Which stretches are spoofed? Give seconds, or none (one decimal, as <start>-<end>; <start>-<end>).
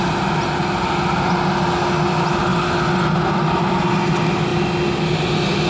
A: none